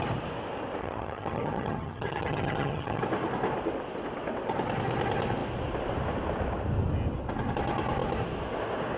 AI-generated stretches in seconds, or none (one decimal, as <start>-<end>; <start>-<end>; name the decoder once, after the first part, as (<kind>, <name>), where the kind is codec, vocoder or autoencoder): 0.8-3.0 (vocoder, HiFi-GAN)